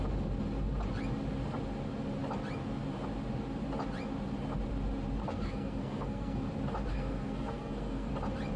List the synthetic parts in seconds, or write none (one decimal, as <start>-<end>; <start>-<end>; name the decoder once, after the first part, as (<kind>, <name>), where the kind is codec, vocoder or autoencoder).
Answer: 5.2-6.4 (codec, SNAC); 6.9-8.1